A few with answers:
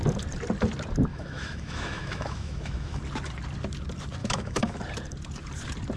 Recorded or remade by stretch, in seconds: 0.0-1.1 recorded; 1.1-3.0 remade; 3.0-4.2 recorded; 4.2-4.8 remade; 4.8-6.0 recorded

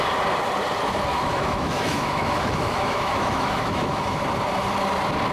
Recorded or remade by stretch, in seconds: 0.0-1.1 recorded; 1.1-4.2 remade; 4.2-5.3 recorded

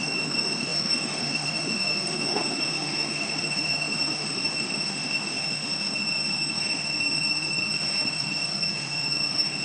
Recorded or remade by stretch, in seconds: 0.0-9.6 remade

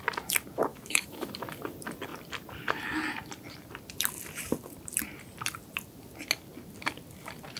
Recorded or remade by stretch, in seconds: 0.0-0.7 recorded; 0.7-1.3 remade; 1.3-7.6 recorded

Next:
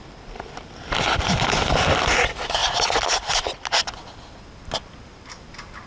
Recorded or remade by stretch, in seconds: 0.0-5.9 recorded